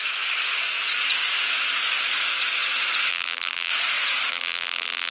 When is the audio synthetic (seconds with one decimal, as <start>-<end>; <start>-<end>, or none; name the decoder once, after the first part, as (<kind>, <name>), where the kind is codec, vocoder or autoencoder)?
3.1-3.7 (vocoder, BigVGAN v2); 4.3-5.1